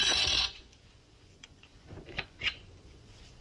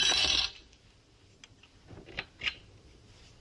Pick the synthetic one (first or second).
first